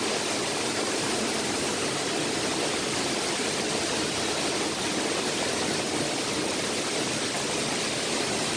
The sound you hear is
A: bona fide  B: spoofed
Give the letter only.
A